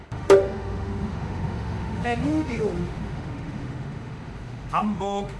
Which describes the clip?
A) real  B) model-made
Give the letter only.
B